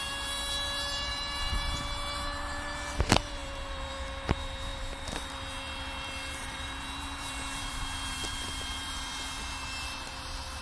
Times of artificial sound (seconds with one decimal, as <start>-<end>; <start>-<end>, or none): 0.0-10.6